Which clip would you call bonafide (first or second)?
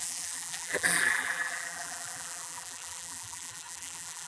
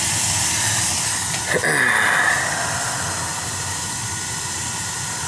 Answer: second